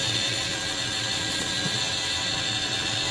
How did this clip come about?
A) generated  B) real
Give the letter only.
A